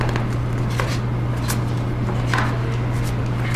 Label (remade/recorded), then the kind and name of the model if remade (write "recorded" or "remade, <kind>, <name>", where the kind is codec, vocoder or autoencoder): recorded